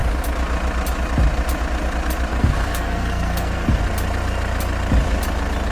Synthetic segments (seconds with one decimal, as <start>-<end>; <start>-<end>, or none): 2.3-3.8